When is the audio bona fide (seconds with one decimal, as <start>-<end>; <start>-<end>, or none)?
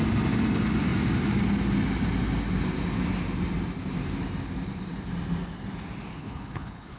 0.0-6.1